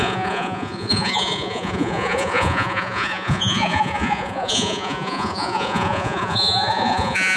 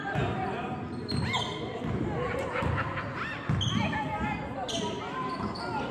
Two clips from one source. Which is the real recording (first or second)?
second